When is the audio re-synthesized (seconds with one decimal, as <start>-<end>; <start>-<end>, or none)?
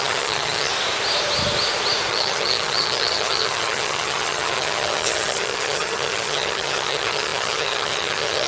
0.0-0.7; 2.1-8.5